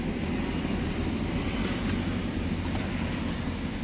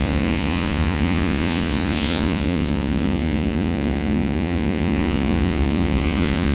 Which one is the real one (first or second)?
first